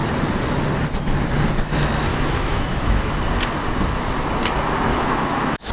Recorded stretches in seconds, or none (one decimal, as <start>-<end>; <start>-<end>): 0.0-2.1; 3.1-4.9